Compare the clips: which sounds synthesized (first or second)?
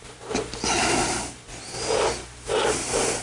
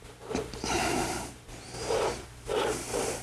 second